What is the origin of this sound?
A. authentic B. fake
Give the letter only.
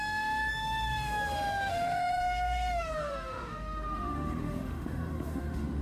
B